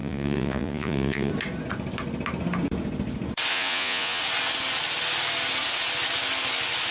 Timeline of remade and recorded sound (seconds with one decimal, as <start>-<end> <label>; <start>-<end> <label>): 0.0-1.3 remade; 1.3-3.5 recorded; 3.5-4.2 remade; 4.2-6.9 recorded